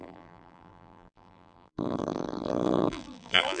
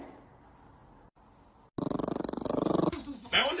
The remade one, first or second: first